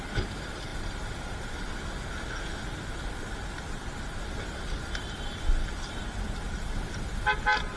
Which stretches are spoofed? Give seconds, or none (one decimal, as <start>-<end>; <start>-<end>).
none